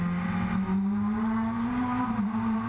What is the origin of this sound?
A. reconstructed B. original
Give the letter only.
B